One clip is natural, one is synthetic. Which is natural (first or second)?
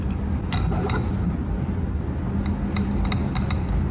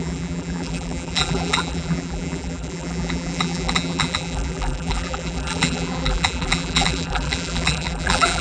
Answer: first